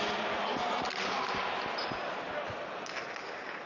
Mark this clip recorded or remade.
recorded